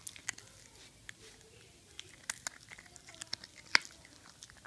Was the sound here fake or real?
real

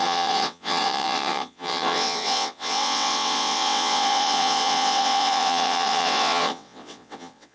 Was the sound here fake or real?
fake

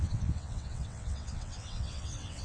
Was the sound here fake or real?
fake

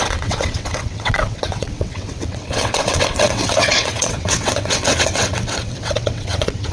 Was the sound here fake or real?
fake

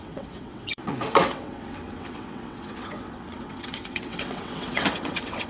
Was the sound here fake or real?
fake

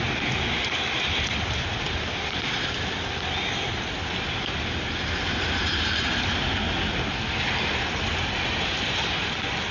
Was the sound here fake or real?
real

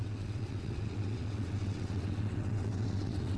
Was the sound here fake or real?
fake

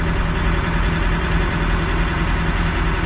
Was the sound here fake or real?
real